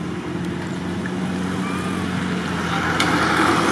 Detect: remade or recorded recorded